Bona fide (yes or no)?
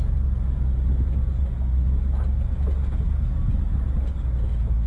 yes